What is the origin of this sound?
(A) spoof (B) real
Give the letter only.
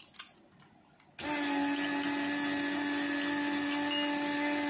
B